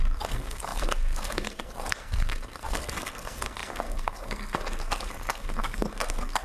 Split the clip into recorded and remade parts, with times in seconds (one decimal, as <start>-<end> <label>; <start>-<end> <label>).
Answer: 0.0-6.4 remade